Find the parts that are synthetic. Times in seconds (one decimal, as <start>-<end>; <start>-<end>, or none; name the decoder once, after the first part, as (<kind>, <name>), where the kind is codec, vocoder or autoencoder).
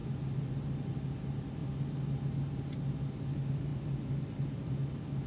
none